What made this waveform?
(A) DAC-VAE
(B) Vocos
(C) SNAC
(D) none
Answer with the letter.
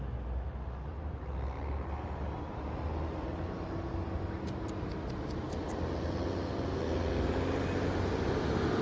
D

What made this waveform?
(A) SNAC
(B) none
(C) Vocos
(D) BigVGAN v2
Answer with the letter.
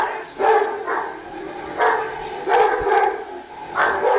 B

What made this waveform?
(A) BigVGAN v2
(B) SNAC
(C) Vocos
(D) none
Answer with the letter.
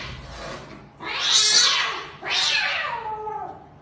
D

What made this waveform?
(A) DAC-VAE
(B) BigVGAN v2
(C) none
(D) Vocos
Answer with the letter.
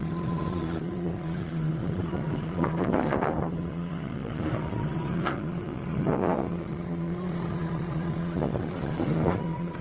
D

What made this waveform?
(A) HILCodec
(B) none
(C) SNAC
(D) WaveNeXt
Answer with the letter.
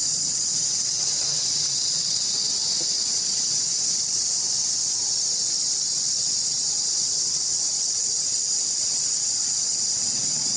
D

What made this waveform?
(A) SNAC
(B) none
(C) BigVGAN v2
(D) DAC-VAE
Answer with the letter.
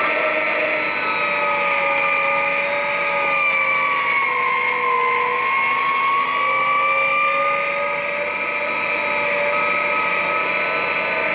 B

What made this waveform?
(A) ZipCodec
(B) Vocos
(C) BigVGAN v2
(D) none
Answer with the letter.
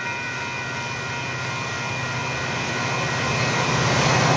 D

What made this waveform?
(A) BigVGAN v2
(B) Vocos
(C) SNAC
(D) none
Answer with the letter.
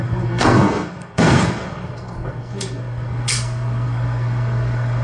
C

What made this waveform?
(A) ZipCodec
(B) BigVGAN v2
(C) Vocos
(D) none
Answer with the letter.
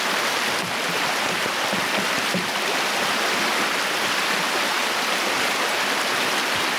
D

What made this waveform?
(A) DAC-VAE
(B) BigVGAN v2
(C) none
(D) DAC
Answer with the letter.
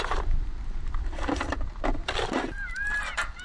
B